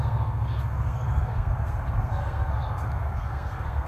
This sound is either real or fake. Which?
fake